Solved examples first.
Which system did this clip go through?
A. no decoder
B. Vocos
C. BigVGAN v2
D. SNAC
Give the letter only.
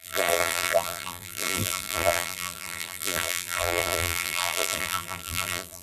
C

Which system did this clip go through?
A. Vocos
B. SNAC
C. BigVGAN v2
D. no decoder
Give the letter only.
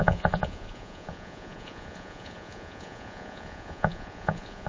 A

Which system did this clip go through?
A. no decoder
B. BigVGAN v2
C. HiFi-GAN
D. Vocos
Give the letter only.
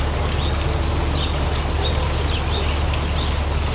A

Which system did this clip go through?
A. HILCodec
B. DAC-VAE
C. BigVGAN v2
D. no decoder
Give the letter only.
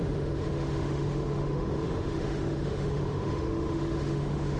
B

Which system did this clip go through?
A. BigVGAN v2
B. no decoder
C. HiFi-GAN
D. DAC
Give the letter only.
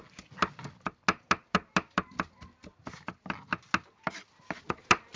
B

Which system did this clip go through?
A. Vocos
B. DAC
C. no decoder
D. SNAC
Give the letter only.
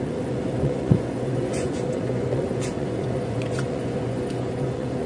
A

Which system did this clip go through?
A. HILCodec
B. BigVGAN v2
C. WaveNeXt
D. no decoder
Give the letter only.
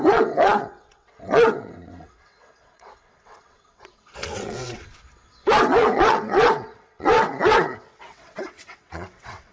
C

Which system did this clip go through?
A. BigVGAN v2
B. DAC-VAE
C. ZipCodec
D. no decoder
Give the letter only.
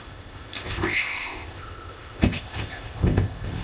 C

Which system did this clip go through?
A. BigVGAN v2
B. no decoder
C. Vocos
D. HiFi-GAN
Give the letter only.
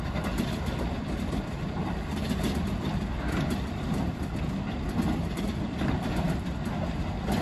A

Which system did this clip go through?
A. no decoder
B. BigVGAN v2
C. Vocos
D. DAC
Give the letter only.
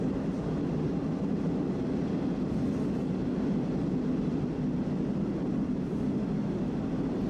A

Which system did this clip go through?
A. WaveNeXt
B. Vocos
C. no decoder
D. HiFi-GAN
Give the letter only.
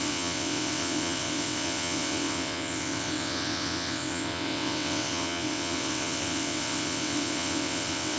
A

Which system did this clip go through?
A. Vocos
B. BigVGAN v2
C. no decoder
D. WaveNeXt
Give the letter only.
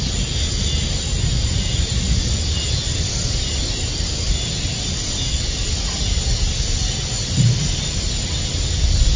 C